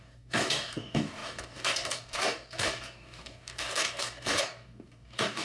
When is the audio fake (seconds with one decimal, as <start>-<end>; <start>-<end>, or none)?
0.0-5.4